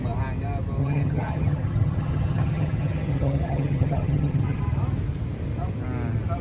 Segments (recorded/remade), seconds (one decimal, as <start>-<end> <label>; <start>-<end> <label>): 0.0-0.8 recorded; 0.8-4.6 remade; 4.6-6.4 recorded